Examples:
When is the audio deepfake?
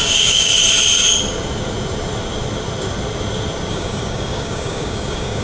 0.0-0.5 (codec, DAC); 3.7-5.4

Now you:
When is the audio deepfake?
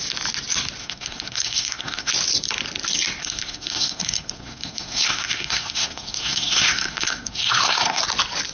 0.8-2.1 (codec, SNAC); 3.2-8.0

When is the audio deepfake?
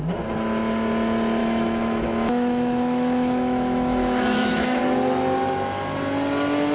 1.4-4.8 (autoencoder, DAC-VAE)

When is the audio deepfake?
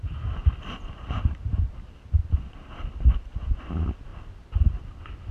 0.4-1.7 (vocoder, BigVGAN v2)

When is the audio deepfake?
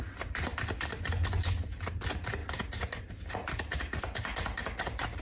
none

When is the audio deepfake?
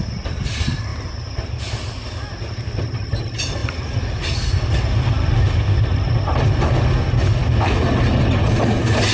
none